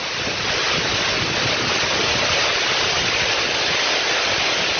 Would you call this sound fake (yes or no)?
no